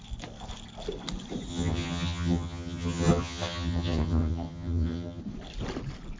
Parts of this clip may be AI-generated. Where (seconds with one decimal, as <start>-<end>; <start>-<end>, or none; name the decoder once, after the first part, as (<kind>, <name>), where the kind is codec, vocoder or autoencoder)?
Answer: 1.5-5.2 (vocoder, HiFi-GAN)